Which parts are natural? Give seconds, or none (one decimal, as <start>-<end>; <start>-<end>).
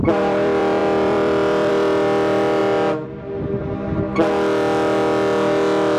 2.6-6.0